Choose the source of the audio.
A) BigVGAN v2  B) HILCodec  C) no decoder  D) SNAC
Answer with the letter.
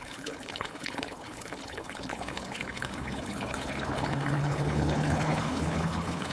B